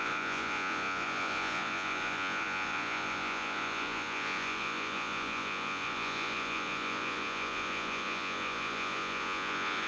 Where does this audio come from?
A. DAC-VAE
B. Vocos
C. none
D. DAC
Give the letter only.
B